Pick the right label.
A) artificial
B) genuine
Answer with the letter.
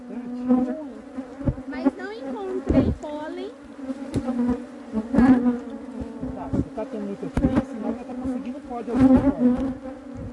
B